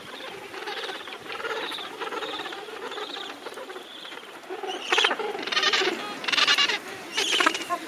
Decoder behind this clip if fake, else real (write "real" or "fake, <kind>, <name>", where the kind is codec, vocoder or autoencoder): fake, vocoder, BigVGAN v2